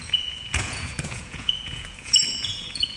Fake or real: fake